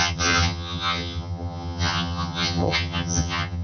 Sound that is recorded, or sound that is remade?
remade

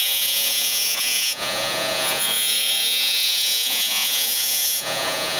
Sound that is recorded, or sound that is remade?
remade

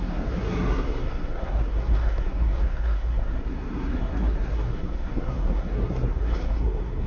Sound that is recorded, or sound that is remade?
remade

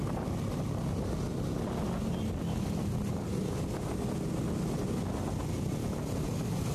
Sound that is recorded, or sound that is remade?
recorded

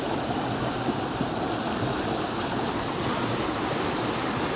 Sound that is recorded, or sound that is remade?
recorded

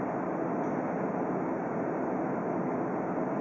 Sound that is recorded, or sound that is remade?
recorded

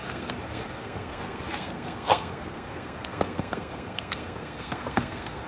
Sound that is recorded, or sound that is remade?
remade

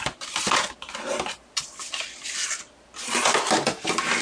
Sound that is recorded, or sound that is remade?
recorded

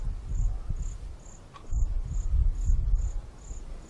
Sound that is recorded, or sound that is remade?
recorded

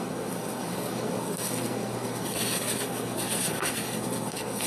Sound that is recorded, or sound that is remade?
remade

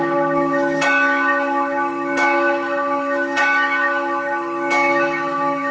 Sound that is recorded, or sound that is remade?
remade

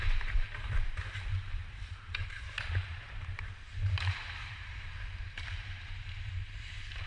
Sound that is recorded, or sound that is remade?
remade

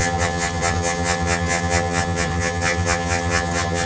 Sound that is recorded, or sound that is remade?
remade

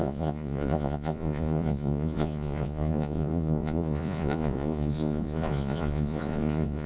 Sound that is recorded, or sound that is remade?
remade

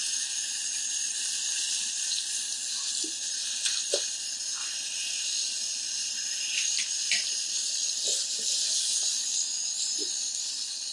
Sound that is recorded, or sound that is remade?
recorded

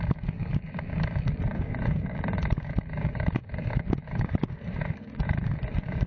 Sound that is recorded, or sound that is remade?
remade